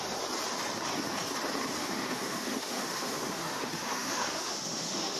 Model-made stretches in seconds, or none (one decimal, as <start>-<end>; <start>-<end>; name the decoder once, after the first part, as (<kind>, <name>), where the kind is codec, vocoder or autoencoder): 1.8-5.2 (autoencoder, DAC-VAE)